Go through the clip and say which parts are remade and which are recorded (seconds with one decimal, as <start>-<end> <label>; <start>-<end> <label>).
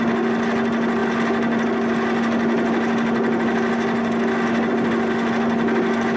0.0-6.2 recorded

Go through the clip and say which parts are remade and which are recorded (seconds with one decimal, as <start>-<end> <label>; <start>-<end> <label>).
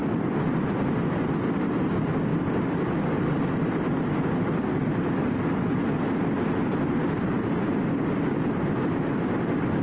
0.0-0.5 remade; 0.5-2.3 recorded; 2.3-4.0 remade; 4.0-9.8 recorded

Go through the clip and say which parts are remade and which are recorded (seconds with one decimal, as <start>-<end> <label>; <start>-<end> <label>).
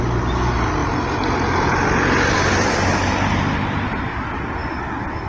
0.0-5.3 recorded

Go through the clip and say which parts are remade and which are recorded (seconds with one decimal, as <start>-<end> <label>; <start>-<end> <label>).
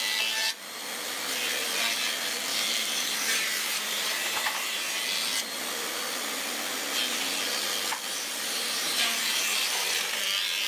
0.0-2.5 recorded; 2.5-5.0 remade; 5.0-8.1 recorded; 8.1-10.2 remade; 10.2-10.7 recorded